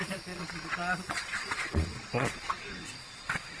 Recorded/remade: remade